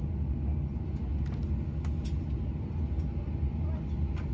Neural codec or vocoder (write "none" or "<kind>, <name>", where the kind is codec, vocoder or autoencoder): none